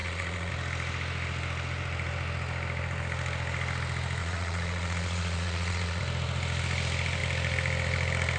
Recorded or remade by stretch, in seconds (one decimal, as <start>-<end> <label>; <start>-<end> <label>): 0.0-0.5 remade; 0.5-4.2 recorded; 4.2-6.0 remade; 6.0-8.4 recorded